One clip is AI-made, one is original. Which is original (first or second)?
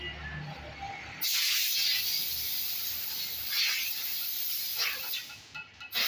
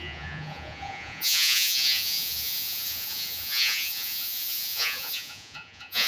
first